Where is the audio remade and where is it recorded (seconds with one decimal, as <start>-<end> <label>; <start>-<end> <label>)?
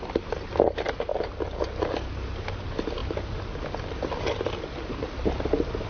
0.0-5.9 recorded